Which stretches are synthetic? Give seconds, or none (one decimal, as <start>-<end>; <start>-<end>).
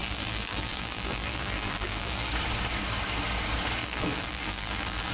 0.0-2.3; 3.8-5.1